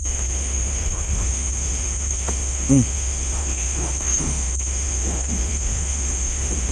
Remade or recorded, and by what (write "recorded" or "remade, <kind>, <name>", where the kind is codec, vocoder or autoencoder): remade, autoencoder, DAC-VAE